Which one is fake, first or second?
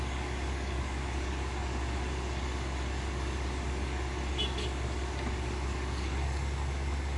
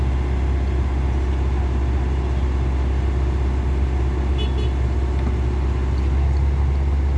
first